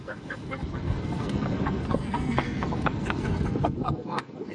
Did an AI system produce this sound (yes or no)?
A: yes